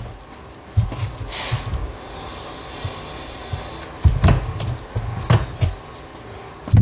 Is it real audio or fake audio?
real